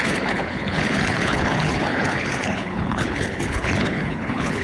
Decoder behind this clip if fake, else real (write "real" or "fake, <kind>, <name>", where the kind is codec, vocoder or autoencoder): fake, codec, HILCodec